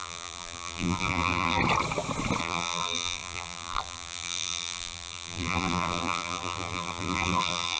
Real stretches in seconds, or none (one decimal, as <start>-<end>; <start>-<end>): 1.6-2.4